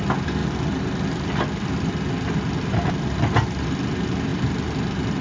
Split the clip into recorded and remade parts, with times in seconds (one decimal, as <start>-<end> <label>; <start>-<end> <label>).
0.0-5.2 recorded

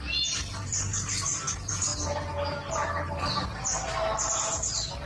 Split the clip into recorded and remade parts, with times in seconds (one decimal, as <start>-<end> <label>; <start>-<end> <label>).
0.0-5.1 recorded

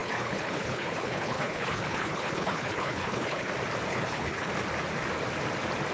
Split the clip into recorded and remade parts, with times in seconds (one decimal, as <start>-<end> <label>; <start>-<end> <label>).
0.0-3.5 remade; 3.5-3.9 recorded; 3.9-4.5 remade; 4.5-5.9 recorded

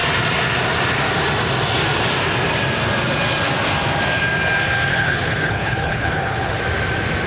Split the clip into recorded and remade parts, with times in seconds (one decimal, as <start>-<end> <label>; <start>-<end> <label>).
0.0-4.9 recorded; 4.9-6.6 remade; 6.6-7.3 recorded

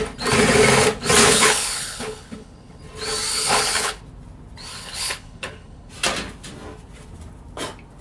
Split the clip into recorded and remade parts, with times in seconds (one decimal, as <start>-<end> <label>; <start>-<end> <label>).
0.0-1.2 recorded; 1.2-2.8 remade; 2.8-3.3 recorded; 3.3-4.0 remade; 4.0-4.7 recorded; 4.7-5.9 remade; 5.9-8.0 recorded

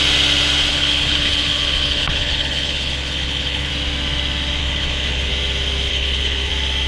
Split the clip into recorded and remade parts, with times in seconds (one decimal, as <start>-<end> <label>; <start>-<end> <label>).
0.0-0.7 recorded; 0.7-3.7 remade; 3.7-4.6 recorded; 4.6-5.3 remade; 5.3-5.9 recorded; 5.9-6.5 remade; 6.5-6.9 recorded